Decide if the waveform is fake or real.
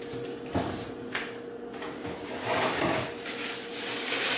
real